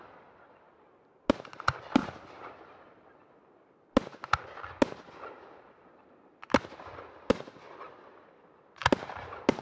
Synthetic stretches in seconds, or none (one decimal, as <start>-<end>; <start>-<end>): none